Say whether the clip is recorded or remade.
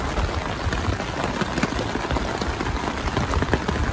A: recorded